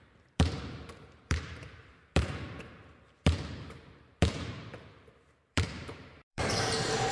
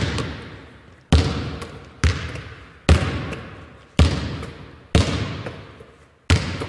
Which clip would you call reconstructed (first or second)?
first